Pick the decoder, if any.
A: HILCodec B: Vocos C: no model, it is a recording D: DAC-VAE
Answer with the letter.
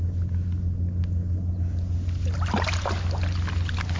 C